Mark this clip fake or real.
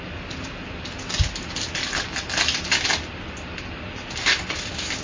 real